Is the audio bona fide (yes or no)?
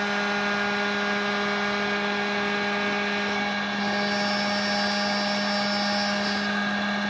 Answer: yes